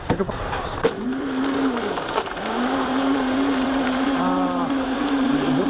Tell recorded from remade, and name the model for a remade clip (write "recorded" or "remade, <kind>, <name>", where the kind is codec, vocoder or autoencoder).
remade, vocoder, BigVGAN v2